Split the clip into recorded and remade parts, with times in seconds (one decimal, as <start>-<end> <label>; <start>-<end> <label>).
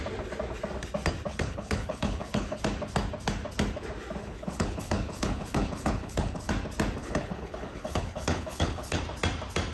0.0-1.3 recorded; 1.3-2.6 remade; 2.6-4.2 recorded; 4.2-6.5 remade; 6.5-7.0 recorded; 7.0-9.0 remade; 9.0-9.7 recorded